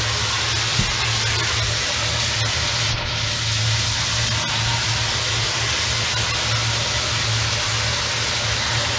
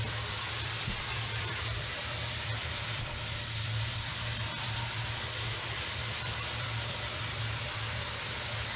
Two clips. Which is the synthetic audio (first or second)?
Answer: second